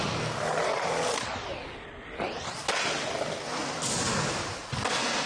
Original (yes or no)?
yes